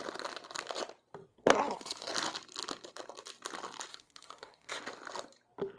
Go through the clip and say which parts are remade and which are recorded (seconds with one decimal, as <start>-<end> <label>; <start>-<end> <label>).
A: 0.0-1.3 recorded; 1.3-2.1 remade; 2.1-3.9 recorded; 3.9-4.8 remade; 4.8-5.8 recorded